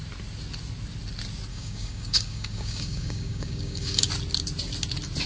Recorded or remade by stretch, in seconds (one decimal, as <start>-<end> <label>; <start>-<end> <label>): 0.0-1.5 recorded; 1.5-4.1 remade; 4.1-5.3 recorded